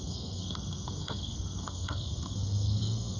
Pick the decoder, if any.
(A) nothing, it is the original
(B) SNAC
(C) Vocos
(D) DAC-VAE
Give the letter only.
B